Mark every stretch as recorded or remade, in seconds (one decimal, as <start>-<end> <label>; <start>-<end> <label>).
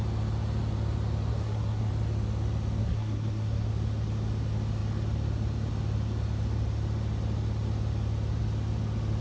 0.0-1.3 recorded; 1.3-1.9 remade; 1.9-2.8 recorded; 2.8-3.7 remade; 3.7-9.2 recorded